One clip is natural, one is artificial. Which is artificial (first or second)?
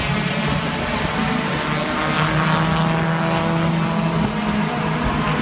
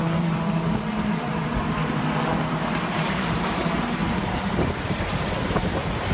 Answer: second